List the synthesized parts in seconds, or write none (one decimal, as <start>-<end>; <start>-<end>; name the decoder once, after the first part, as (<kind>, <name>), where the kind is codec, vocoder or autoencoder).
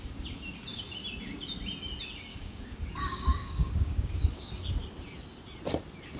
2.3-4.5 (codec, DAC)